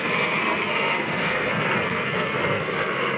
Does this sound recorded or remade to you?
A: remade